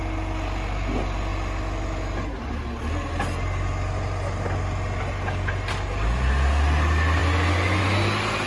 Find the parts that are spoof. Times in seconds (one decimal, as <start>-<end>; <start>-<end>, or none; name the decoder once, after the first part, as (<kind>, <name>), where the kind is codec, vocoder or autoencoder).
none